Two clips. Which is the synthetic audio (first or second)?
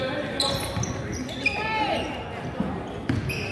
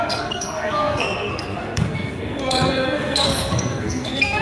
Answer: second